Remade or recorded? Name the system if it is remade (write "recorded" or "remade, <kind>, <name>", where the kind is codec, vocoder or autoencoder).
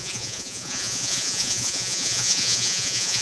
remade, vocoder, Vocos